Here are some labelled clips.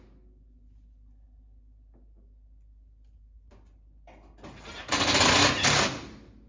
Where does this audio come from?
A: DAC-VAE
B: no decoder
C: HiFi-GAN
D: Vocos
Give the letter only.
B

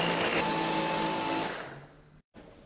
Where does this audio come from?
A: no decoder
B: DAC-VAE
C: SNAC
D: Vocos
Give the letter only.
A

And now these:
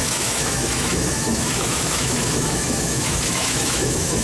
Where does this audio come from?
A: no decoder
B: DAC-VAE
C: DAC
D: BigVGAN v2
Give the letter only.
B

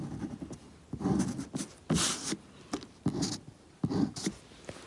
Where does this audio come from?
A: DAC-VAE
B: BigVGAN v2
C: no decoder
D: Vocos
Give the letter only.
C